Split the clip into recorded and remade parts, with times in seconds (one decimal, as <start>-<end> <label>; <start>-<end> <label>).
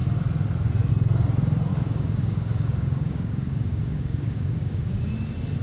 0.0-1.7 recorded; 1.7-5.1 remade; 5.1-5.6 recorded